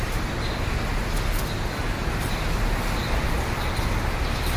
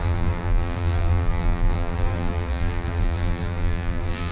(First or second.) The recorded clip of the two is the first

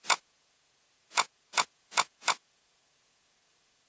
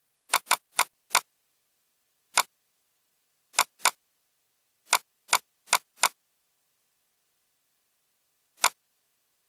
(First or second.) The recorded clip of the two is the second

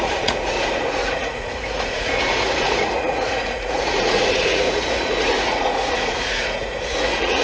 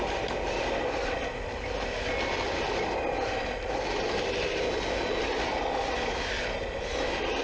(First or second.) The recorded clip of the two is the second